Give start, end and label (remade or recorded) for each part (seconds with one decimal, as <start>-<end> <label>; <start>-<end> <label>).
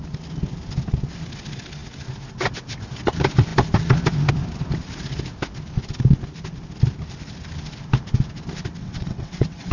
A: 0.0-8.8 recorded; 8.8-9.7 remade